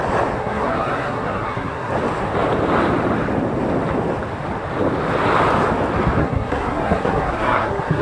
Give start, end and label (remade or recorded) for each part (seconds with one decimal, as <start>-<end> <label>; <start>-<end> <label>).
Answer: 0.0-0.4 recorded; 0.4-1.9 remade; 1.9-6.2 recorded; 6.2-8.0 remade